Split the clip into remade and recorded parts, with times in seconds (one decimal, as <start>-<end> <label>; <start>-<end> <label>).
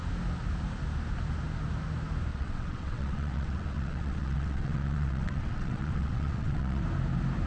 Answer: 0.0-2.3 recorded; 2.3-6.8 remade; 6.8-7.5 recorded